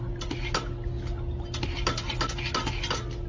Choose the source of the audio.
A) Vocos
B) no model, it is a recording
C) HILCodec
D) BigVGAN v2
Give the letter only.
B